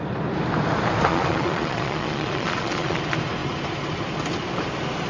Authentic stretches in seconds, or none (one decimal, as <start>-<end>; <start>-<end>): 0.0-1.1; 3.0-5.1